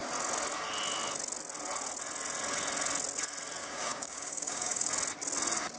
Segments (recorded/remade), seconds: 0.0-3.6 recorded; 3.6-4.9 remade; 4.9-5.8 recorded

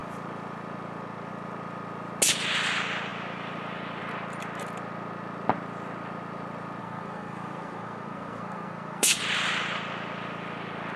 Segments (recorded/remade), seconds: 0.0-6.8 recorded; 6.8-9.2 remade; 9.2-11.0 recorded

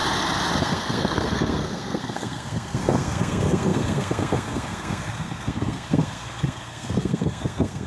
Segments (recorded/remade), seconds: 0.0-0.6 recorded; 0.6-7.9 remade

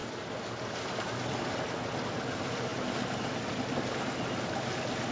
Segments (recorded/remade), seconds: 0.0-2.7 remade; 2.7-3.2 recorded; 3.2-5.1 remade

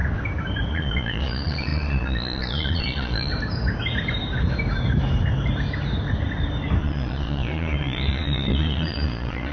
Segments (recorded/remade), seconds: 0.0-0.7 recorded; 0.7-3.3 remade; 3.3-6.8 recorded; 6.8-9.5 remade